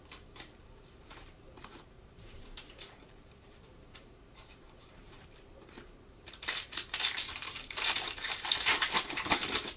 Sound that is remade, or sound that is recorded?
remade